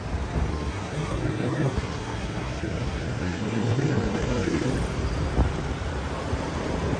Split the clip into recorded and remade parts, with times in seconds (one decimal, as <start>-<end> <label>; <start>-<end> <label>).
0.0-0.5 recorded; 0.5-4.7 remade; 4.7-7.0 recorded